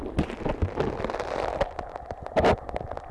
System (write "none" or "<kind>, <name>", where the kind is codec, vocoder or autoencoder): none